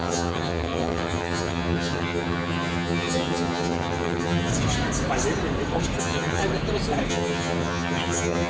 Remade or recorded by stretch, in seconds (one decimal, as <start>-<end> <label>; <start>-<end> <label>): 0.0-4.5 remade; 4.5-6.0 recorded; 6.0-6.4 remade; 6.4-7.1 recorded; 7.1-8.5 remade